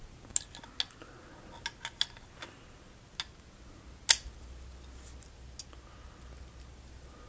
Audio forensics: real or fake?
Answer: real